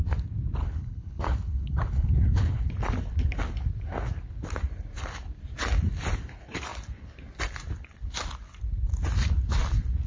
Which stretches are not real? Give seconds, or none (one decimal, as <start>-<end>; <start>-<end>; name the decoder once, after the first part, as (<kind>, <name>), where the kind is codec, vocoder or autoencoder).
0.6-2.7 (codec, HILCodec)